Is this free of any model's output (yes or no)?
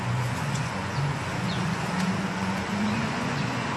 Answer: no